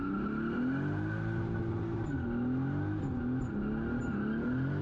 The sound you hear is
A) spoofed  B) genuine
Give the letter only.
B